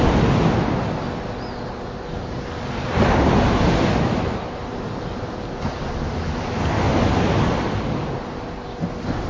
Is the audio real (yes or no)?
yes